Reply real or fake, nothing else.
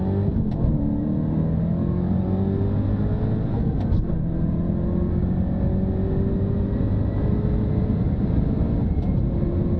real